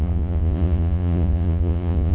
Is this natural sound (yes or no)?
no